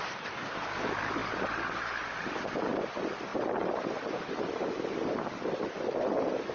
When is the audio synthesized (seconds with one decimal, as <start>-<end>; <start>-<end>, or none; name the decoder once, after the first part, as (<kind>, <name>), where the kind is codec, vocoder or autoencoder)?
none

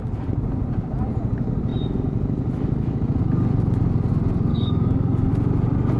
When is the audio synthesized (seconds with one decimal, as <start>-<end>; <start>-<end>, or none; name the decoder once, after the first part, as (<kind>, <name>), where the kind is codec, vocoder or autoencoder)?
4.5-5.3 (codec, DAC)

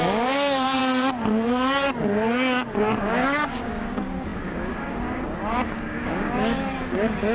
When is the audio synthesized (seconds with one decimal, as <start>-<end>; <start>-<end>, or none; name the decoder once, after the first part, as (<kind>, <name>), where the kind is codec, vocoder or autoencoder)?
0.0-0.8 (codec, DAC); 2.8-7.3

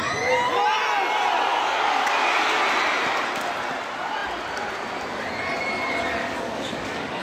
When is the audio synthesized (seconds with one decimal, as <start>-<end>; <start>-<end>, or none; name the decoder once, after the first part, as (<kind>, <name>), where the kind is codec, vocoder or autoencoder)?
1.5-2.6 (codec, DAC); 6.2-7.2

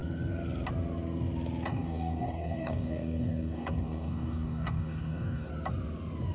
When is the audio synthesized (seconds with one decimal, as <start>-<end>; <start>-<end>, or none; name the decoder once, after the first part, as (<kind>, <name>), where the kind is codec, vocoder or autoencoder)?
1.7-5.5 (codec, DAC)